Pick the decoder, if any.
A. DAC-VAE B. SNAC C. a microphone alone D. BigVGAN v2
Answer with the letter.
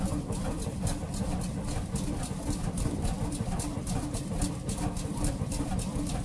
D